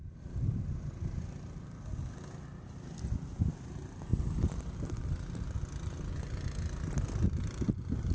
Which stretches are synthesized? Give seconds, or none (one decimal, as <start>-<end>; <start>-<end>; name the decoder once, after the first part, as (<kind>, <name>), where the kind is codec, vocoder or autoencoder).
none